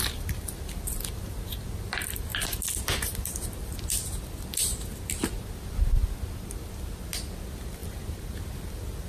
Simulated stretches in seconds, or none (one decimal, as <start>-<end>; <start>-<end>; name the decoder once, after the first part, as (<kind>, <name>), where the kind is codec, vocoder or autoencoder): none